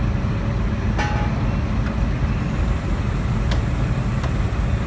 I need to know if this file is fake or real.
real